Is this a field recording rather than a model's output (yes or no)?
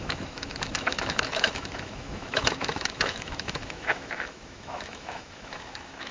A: no